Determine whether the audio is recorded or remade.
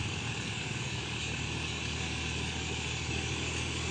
remade